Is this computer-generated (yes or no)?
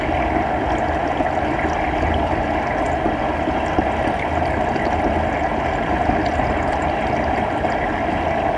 no